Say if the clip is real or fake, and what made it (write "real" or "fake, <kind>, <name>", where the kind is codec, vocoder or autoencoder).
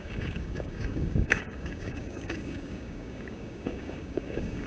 fake, codec, DAC